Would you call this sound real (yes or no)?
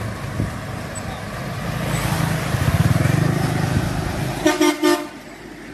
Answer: yes